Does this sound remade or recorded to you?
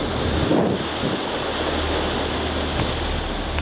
recorded